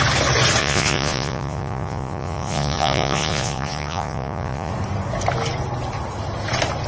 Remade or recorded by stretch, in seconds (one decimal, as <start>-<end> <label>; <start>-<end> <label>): 0.0-0.6 recorded; 0.6-4.7 remade; 4.7-6.9 recorded